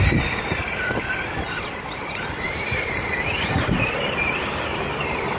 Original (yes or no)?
yes